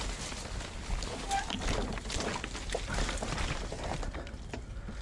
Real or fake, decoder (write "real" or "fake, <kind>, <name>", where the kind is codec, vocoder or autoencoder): real